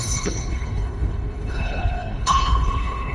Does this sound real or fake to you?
fake